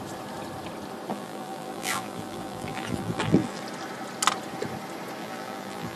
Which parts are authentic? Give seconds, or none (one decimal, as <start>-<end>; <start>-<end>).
0.0-1.1; 3.6-5.2